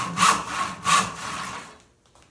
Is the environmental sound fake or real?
real